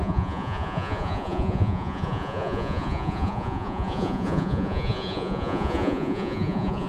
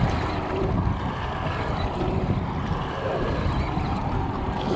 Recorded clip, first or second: second